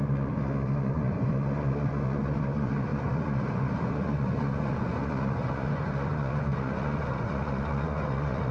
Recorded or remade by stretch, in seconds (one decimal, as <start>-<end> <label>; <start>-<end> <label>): 0.0-8.5 remade